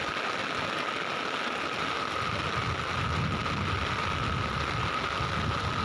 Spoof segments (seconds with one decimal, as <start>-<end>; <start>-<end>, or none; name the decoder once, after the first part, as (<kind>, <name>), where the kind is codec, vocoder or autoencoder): none